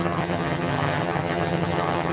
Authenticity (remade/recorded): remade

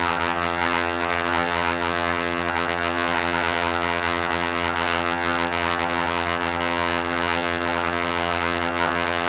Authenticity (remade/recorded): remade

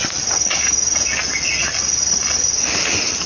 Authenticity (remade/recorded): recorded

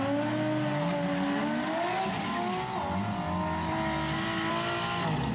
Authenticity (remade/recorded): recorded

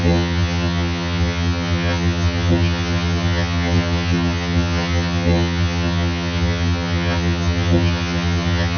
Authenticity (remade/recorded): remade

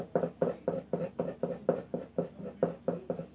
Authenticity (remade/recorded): recorded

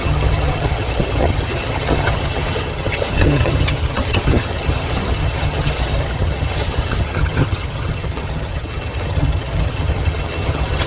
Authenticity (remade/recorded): remade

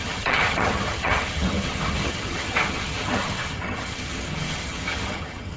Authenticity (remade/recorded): remade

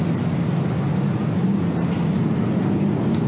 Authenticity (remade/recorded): recorded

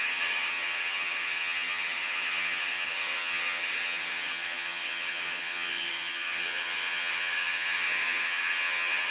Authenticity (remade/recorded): remade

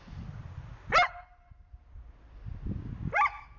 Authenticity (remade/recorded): recorded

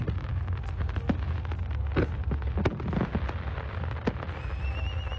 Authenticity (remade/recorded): recorded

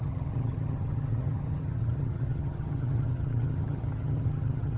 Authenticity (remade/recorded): remade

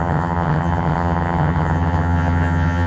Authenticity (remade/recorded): remade